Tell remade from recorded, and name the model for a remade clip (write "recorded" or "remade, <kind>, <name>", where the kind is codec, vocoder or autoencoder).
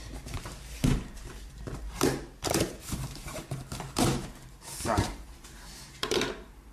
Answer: remade, vocoder, BigVGAN v2